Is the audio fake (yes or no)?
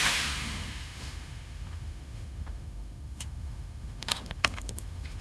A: yes